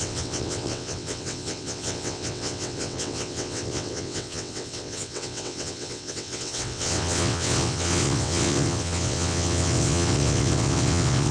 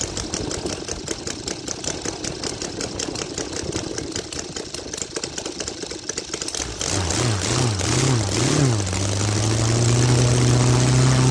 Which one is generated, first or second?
first